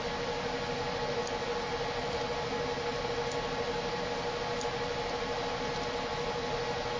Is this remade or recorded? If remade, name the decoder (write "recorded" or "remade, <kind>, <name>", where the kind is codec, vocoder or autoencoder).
recorded